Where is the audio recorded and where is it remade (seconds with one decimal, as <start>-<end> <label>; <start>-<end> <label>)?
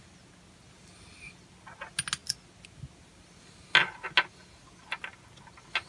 0.0-5.9 recorded